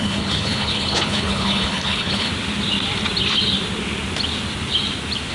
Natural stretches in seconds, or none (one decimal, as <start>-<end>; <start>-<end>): 2.3-5.3